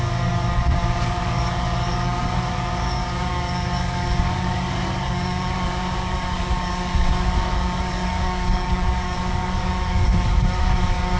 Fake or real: fake